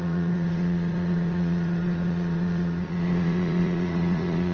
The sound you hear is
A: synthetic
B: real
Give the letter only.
A